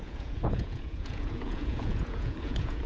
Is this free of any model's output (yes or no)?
no